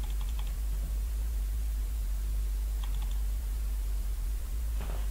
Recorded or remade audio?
remade